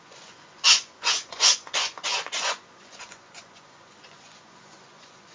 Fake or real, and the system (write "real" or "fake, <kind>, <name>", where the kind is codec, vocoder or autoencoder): fake, vocoder, Vocos